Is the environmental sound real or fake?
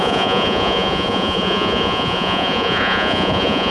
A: fake